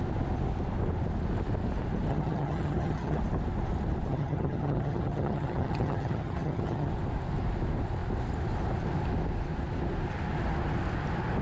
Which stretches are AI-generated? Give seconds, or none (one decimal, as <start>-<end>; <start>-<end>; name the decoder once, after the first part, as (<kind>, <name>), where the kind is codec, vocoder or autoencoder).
2.1-3.2 (vocoder, HiFi-GAN); 4.1-6.9